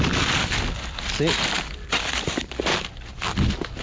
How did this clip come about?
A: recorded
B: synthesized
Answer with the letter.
A